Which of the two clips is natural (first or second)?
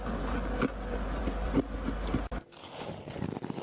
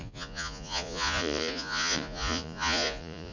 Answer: first